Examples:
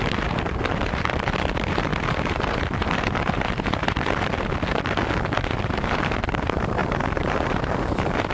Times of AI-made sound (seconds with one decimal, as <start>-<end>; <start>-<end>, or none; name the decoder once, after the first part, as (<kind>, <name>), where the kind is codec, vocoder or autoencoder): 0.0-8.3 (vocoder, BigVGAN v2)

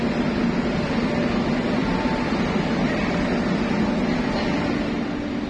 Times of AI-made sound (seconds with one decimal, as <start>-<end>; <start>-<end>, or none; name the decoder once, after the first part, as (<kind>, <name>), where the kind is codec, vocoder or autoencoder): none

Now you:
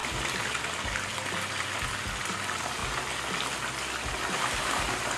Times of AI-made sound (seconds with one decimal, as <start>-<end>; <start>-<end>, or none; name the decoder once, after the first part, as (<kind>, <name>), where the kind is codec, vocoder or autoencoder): 0.0-1.9 (vocoder, BigVGAN v2)